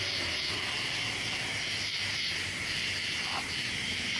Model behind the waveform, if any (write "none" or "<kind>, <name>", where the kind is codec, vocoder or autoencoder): vocoder, BigVGAN v2